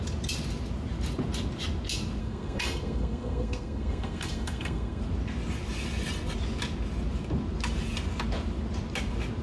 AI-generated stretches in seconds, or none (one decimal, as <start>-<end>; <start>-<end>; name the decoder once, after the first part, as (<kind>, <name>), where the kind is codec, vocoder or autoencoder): 2.2-5.0 (codec, SNAC)